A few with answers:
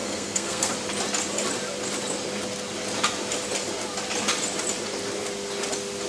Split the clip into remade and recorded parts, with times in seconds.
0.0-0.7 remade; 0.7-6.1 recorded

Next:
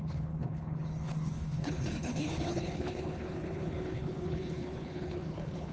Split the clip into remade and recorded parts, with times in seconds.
0.0-5.7 remade

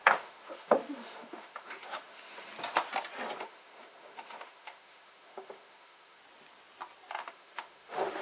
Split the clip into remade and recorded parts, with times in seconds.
0.0-2.5 remade; 2.5-3.4 recorded; 3.4-6.2 remade; 6.2-7.2 recorded; 7.2-8.2 remade

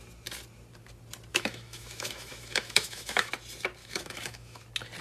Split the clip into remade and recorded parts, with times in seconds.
0.0-1.3 recorded; 1.3-3.3 remade; 3.3-3.8 recorded; 3.8-4.6 remade; 4.6-5.0 recorded

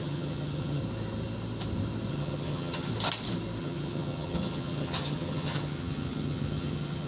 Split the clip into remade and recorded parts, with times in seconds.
0.0-0.8 remade; 0.8-2.1 recorded; 2.1-2.9 remade; 2.9-3.6 recorded; 3.6-7.1 remade

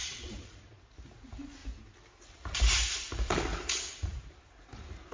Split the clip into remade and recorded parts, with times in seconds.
0.0-0.8 remade; 0.8-5.1 recorded

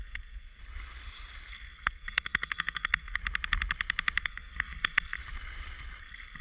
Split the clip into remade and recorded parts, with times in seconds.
0.0-0.6 remade; 0.6-1.5 recorded; 1.5-3.2 remade; 3.2-4.2 recorded; 4.2-5.2 remade; 5.2-6.0 recorded; 6.0-6.4 remade

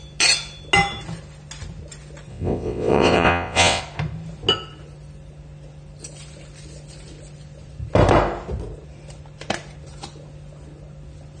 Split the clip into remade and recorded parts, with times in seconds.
0.0-2.3 recorded; 2.3-3.8 remade; 3.8-11.4 recorded